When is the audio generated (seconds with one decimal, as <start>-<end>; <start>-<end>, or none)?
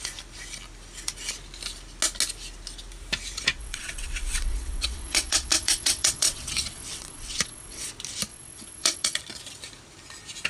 3.6-7.9; 8.3-9.2